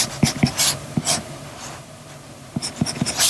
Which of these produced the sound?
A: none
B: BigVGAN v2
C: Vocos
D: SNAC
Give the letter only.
B